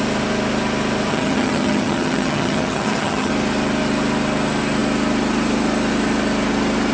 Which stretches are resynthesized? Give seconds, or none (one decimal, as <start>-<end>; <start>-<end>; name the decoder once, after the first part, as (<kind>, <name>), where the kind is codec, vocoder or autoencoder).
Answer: 1.1-3.3 (vocoder, HiFi-GAN)